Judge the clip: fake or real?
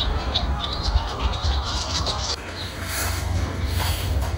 fake